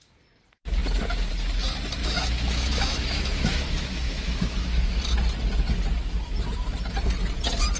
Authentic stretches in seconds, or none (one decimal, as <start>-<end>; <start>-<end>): 0.0-2.0; 5.0-7.8